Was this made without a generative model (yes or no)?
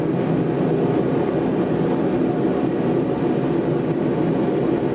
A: yes